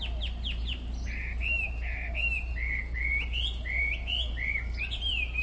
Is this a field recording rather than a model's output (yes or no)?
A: no